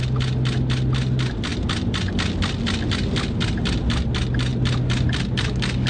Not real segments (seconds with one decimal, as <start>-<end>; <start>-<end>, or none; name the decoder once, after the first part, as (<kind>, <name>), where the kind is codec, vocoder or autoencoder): none